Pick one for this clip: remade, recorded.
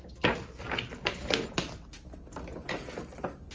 recorded